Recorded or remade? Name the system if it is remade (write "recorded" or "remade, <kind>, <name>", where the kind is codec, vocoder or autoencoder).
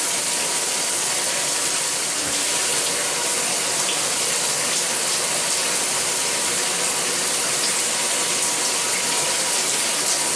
recorded